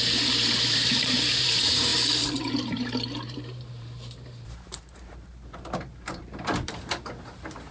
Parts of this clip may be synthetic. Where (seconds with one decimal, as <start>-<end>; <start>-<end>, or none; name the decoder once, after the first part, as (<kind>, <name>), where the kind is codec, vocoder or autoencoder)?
0.0-1.9 (vocoder, BigVGAN v2); 2.4-7.7